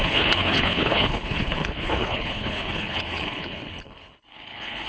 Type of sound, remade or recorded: remade